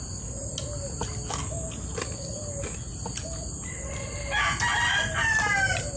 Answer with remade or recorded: recorded